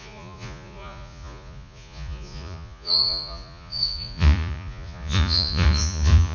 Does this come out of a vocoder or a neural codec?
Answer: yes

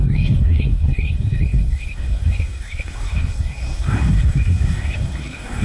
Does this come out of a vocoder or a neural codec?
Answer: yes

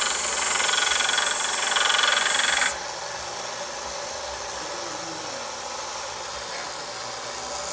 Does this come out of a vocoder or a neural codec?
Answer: no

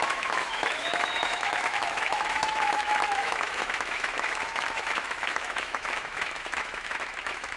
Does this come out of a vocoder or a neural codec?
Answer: yes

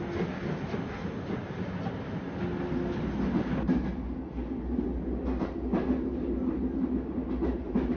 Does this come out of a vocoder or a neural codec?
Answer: no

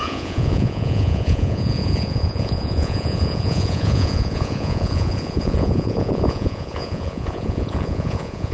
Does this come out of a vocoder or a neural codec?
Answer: yes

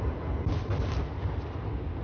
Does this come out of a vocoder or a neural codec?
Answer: no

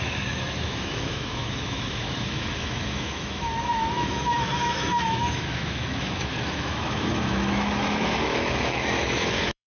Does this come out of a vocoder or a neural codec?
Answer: yes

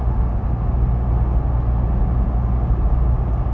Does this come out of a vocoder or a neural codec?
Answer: no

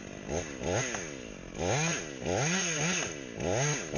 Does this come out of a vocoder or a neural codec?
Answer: no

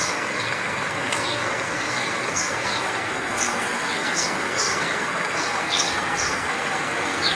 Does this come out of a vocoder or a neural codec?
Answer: yes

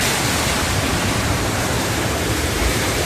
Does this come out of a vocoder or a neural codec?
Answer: yes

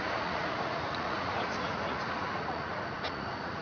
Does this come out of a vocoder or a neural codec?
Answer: yes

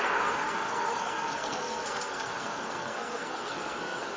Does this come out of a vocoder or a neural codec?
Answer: yes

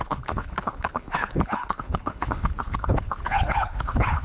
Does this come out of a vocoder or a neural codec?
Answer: yes